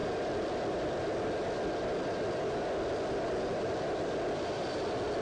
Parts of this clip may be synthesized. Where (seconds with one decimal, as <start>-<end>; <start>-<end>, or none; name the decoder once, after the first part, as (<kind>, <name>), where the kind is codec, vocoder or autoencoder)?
none